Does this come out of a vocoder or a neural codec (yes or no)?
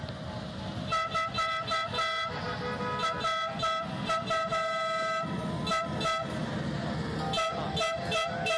no